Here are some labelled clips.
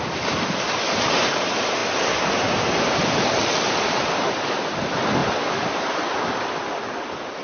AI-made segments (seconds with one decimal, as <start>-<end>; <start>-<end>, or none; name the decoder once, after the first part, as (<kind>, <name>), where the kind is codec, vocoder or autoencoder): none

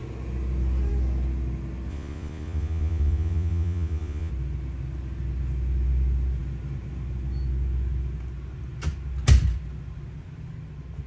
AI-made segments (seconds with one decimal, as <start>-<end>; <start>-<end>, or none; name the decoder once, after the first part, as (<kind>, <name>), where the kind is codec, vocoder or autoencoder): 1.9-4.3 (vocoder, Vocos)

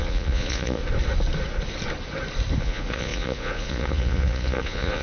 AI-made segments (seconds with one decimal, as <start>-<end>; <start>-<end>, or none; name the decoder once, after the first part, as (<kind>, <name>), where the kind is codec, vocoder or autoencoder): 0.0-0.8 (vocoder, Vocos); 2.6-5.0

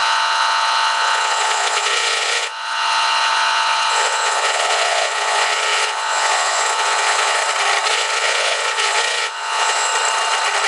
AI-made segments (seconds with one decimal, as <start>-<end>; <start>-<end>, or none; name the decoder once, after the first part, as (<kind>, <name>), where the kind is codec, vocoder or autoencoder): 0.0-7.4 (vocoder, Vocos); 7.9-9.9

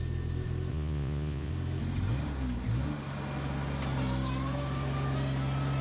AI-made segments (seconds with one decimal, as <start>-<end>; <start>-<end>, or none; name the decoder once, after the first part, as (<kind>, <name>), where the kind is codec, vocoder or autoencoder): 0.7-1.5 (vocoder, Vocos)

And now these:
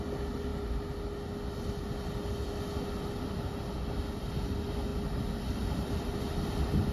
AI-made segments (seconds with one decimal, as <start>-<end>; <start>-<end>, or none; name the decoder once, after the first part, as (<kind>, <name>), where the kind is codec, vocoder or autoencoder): none

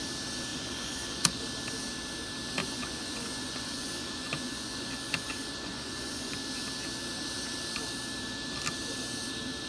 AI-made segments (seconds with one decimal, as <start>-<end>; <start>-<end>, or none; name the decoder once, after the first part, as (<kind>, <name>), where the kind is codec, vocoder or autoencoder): 0.5-1.4 (vocoder, Vocos); 2.6-6.4

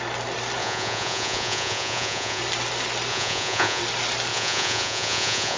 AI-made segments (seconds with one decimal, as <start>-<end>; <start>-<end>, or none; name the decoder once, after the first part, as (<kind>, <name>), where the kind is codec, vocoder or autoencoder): 0.6-2.4 (vocoder, Vocos); 3.1-3.8; 4.3-5.6